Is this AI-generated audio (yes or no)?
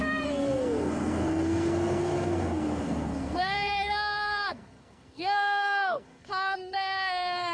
yes